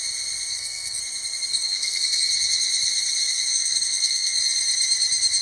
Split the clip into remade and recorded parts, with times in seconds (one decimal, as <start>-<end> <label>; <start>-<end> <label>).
0.0-0.5 recorded; 0.5-1.0 remade; 1.0-1.5 recorded; 1.5-2.3 remade; 2.3-3.5 recorded; 3.5-4.4 remade; 4.4-5.4 recorded